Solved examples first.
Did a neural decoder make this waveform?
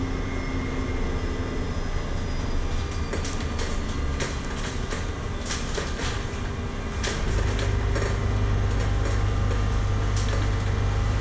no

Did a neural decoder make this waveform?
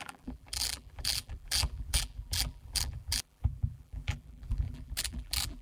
yes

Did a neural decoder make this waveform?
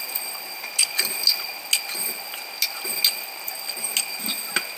no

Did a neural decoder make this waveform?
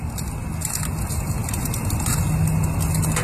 no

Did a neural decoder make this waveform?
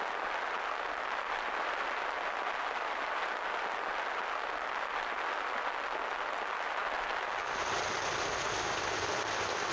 no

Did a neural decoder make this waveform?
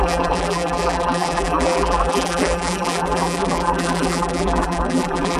yes